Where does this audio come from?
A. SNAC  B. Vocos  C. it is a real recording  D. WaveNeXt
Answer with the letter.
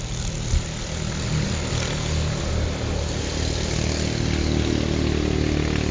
C